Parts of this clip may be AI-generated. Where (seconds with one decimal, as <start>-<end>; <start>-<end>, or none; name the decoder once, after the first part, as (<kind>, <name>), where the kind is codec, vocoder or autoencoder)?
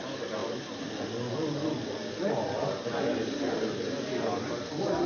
0.4-3.5 (vocoder, BigVGAN v2)